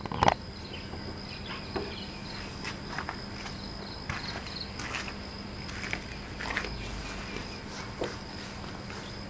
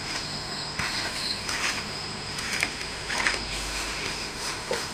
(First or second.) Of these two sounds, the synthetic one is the second